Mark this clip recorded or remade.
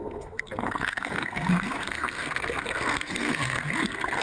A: remade